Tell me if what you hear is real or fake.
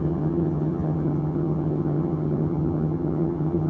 fake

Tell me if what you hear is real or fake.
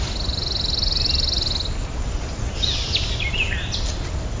real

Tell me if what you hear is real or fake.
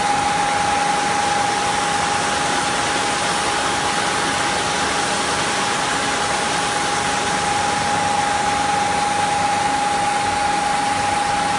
real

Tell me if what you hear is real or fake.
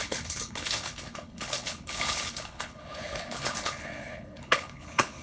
fake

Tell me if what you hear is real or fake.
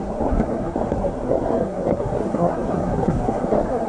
fake